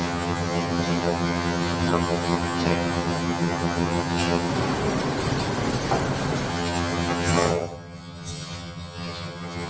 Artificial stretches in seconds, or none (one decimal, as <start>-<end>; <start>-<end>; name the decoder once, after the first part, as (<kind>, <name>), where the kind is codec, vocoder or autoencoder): 0.0-4.5 (vocoder, HiFi-GAN); 6.5-9.7